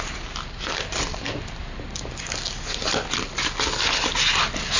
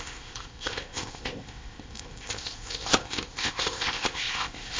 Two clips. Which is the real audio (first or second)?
first